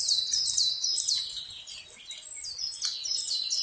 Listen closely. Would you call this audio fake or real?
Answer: real